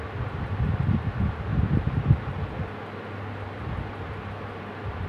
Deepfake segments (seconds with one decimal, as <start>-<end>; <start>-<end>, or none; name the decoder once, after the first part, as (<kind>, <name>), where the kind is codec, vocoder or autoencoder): none